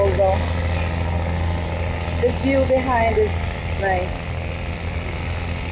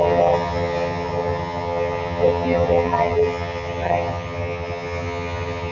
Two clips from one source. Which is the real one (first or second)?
first